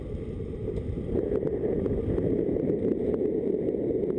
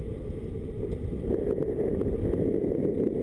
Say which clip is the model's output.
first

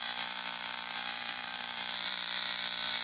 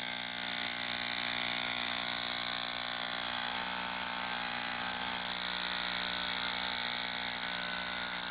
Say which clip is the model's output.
first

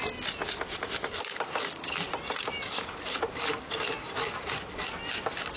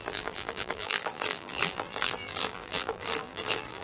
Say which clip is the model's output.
second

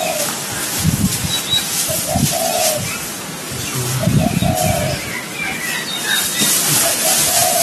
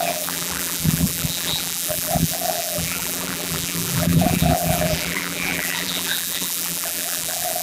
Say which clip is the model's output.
second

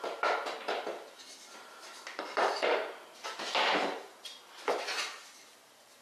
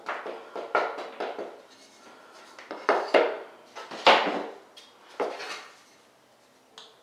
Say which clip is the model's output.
first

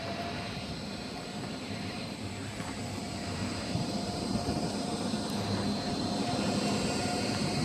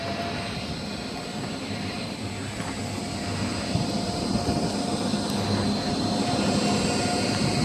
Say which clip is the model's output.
first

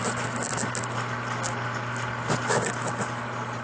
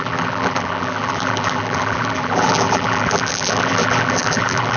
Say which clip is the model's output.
second